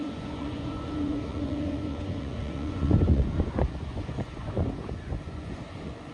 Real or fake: fake